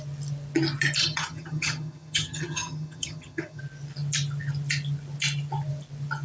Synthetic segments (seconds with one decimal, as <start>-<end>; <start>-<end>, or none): 1.0-3.6